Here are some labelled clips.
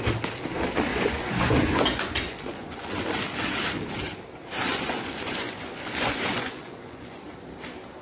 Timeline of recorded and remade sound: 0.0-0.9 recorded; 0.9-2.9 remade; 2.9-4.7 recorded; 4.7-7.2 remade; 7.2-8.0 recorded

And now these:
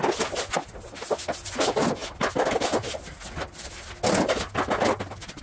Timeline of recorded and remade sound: 0.0-5.4 recorded

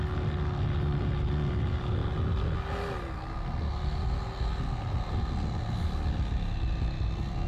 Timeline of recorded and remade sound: 0.0-7.5 recorded